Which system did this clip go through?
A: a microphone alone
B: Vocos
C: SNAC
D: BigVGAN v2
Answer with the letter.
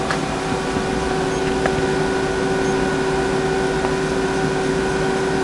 A